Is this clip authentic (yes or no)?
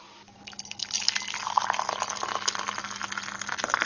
yes